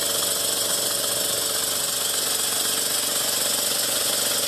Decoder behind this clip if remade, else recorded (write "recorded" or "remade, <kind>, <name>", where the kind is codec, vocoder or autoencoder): recorded